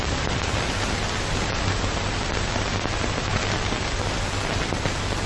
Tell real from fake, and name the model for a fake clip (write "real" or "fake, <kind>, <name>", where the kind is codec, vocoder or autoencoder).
real